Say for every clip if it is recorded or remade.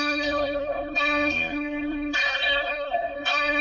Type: remade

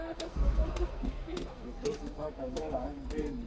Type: remade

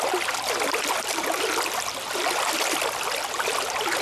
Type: recorded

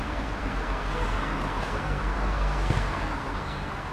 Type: remade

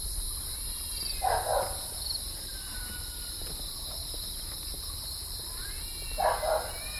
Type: recorded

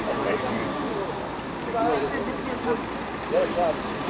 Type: recorded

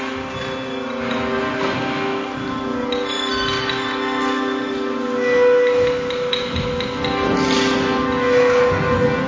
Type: recorded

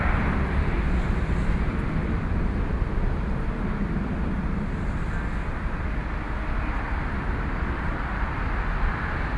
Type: recorded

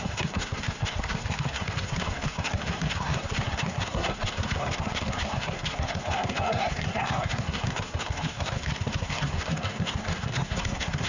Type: remade